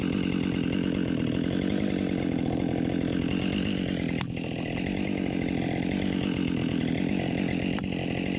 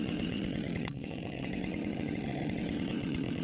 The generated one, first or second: second